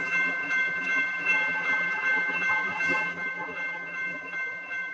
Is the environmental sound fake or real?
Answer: fake